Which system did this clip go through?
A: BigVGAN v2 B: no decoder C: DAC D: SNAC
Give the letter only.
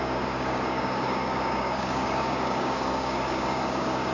C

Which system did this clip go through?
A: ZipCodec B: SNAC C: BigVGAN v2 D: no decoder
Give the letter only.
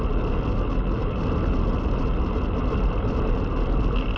D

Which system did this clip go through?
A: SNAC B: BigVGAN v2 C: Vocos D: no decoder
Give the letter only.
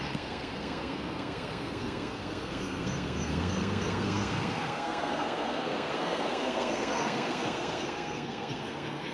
A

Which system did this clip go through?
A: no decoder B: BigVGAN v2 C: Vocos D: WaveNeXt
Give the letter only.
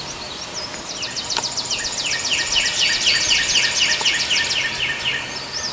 A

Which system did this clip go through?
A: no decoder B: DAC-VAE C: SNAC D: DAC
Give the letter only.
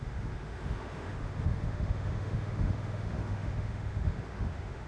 B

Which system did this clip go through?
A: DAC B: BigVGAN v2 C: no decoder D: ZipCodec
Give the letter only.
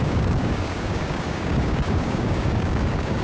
A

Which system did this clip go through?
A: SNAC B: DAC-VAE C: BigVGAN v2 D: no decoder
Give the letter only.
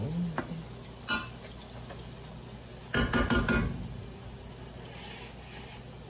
D